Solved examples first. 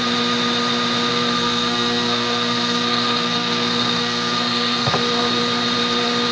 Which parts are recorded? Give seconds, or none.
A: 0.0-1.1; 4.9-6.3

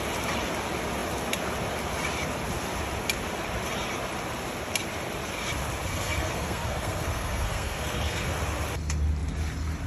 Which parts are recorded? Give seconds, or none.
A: 0.0-5.9; 8.3-9.9

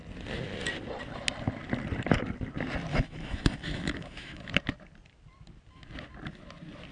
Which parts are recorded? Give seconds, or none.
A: 0.0-2.9; 4.5-6.9

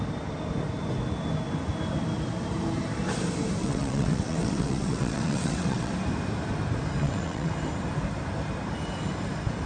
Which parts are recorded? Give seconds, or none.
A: 0.0-3.6; 5.9-7.0; 7.5-9.7

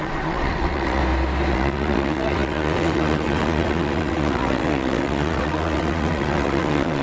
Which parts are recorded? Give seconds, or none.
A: 1.0-1.5

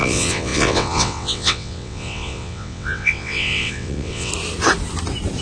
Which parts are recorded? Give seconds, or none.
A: 4.3-5.4